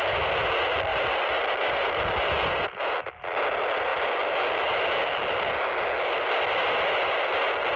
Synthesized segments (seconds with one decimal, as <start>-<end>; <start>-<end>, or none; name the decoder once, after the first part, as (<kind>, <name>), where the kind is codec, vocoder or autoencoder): none